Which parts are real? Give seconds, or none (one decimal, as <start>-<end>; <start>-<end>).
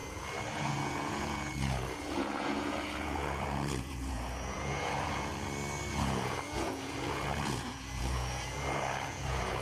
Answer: 5.3-5.9